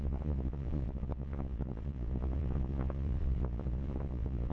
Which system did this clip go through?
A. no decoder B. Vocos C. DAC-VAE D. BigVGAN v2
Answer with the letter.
B